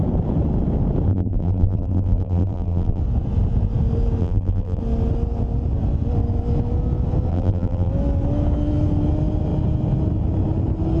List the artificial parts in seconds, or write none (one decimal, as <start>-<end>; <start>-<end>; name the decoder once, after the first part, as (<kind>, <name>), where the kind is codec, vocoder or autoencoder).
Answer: 1.1-3.0 (vocoder, BigVGAN v2); 4.2-4.8; 7.3-7.9